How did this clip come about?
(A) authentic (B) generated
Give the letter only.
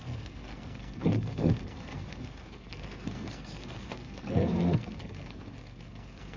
B